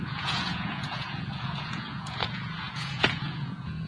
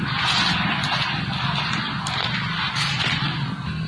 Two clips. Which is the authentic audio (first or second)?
second